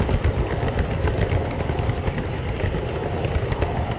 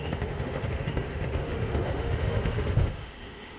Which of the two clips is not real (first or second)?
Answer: second